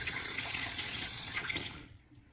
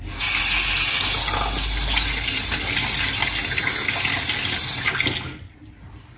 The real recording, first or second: second